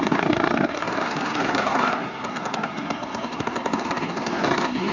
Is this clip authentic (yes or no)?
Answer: no